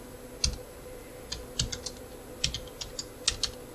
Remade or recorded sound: recorded